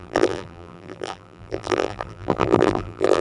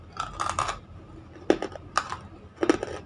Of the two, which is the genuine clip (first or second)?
second